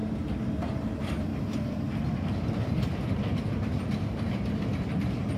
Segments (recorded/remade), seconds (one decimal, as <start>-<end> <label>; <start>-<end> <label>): 0.0-0.6 recorded; 0.6-5.4 remade